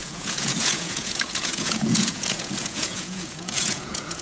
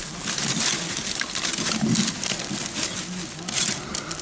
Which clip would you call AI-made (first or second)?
first